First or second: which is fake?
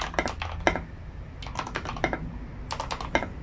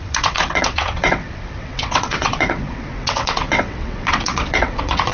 second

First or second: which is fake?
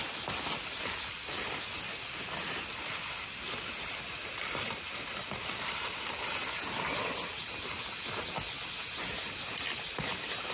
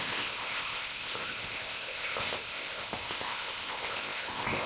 second